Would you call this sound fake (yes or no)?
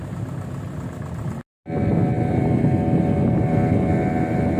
no